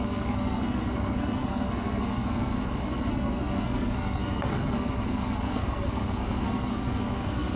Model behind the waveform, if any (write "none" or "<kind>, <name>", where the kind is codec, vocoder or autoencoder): codec, SNAC